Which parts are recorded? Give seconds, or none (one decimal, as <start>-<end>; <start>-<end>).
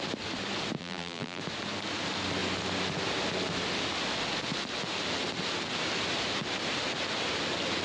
0.0-0.8; 1.4-7.8